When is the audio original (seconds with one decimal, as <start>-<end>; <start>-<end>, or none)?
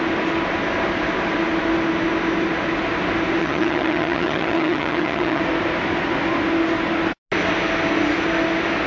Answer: 0.0-3.4; 5.4-8.9